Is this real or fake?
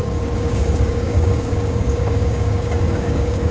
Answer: fake